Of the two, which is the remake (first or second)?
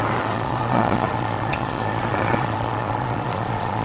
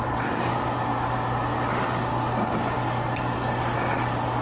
first